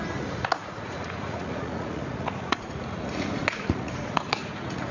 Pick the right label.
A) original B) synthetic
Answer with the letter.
B